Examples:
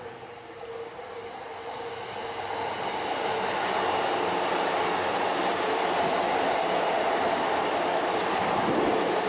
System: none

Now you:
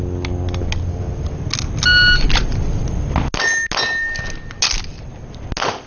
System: none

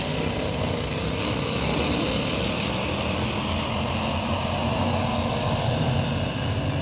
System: none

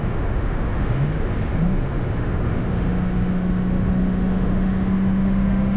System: autoencoder, DAC-VAE